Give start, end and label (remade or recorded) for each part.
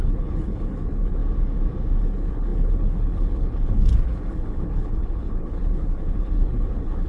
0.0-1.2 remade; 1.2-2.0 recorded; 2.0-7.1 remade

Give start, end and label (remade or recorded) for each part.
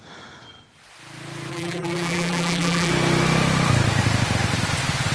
0.0-1.5 recorded; 1.5-2.9 remade; 2.9-5.1 recorded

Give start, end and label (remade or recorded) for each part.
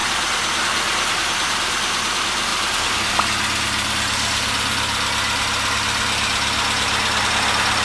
0.0-7.8 recorded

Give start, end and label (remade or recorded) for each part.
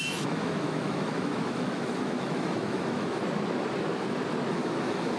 0.0-3.2 remade; 3.2-4.5 recorded; 4.5-5.2 remade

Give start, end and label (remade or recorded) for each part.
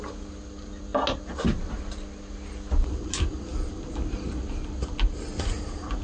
0.0-6.0 recorded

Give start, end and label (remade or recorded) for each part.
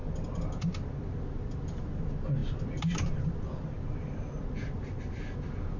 0.0-5.8 recorded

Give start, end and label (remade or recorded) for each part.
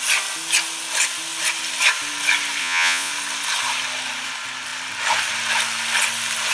0.0-2.6 recorded; 2.6-3.1 remade; 3.1-6.5 recorded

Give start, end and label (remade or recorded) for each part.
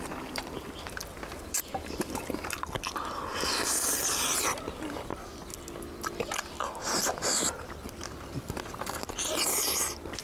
0.0-10.2 recorded